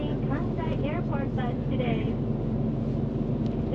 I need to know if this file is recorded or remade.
recorded